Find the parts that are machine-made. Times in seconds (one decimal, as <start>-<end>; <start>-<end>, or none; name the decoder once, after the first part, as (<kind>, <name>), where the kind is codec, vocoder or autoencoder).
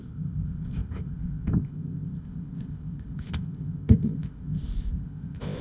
0.0-5.6 (codec, ZipCodec)